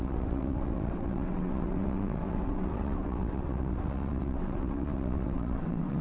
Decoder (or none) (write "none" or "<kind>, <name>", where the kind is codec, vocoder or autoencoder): vocoder, WaveNeXt